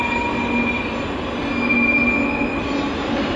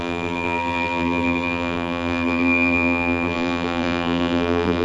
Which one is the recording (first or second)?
first